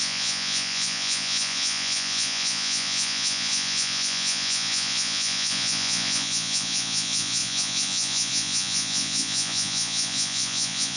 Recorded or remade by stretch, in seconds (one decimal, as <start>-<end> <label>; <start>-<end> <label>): 0.0-11.0 remade